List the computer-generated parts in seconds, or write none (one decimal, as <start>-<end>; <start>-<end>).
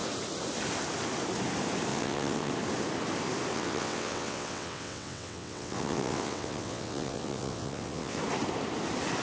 1.9-2.5; 3.5-8.2